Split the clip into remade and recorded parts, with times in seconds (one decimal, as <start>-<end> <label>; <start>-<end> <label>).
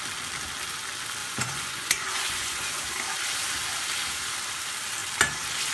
0.0-1.2 recorded; 1.2-2.8 remade; 2.8-5.7 recorded